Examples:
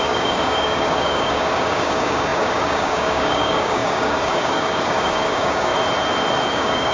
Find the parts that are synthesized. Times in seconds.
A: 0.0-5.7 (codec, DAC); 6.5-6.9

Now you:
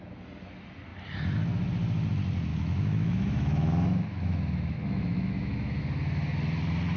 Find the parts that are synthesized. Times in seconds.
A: 2.5-5.8 (autoencoder, DAC-VAE)

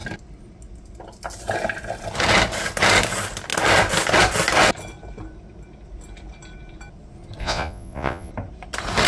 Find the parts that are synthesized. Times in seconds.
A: 7.4-8.3 (vocoder, Vocos)

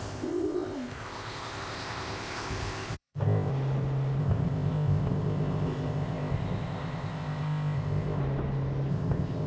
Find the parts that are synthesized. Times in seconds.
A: 0.0-3.5 (codec, ZipCodec); 4.2-8.2; 8.9-9.5

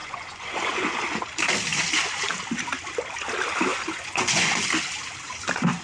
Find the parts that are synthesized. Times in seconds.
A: 0.0-0.9 (vocoder, Vocos); 3.7-4.7

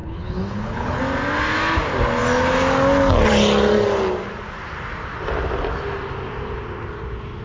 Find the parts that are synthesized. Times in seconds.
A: 0.0-1.0 (codec, HILCodec)

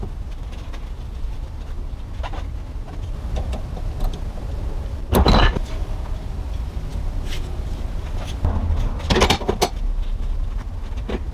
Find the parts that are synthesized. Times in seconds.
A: none